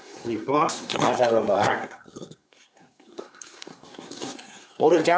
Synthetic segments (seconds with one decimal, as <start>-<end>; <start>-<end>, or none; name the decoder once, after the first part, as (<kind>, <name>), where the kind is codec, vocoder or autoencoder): 0.0-5.2 (codec, SNAC)